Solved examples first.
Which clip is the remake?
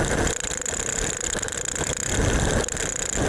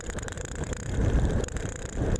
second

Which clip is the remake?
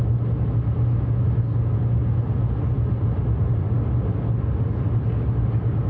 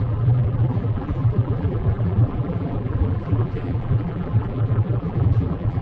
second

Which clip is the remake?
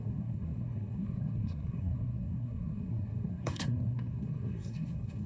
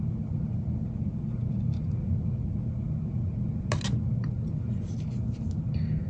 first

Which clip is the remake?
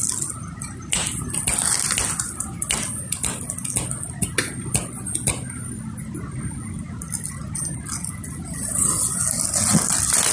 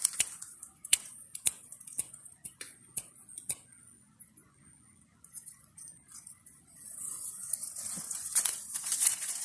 second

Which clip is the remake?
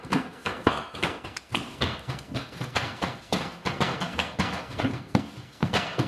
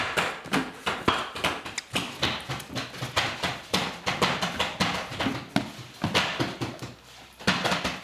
first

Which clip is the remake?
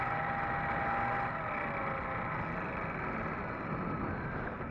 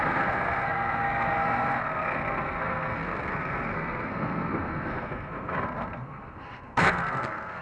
second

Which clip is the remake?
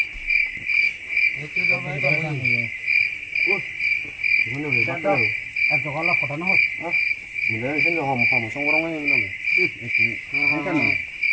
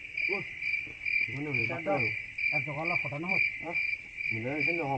second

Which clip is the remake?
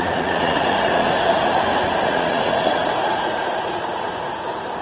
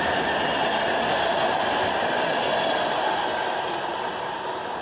first